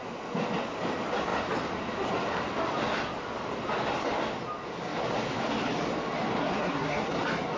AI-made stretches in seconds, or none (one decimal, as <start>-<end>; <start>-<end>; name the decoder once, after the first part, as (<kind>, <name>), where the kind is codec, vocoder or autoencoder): 6.4-7.1 (codec, SNAC)